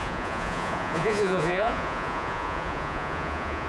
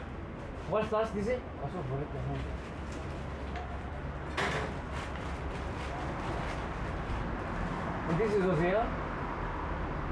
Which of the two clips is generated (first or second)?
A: first